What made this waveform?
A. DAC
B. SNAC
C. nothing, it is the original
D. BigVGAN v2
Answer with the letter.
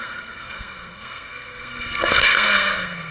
B